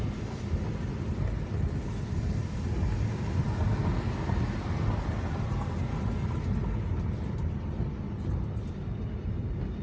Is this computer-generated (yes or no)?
no